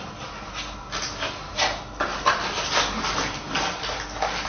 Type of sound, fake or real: real